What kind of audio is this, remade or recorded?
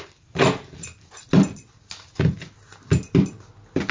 recorded